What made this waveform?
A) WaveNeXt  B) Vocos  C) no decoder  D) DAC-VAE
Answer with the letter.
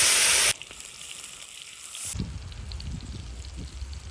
C